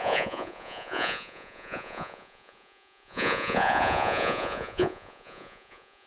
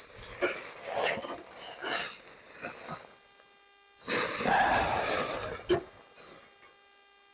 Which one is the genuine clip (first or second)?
second